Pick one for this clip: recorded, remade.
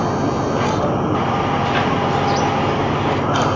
recorded